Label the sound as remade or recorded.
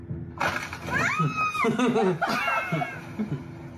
recorded